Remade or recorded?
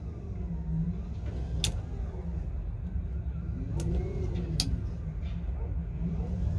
recorded